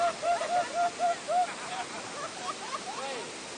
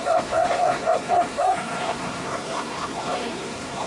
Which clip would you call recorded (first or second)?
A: first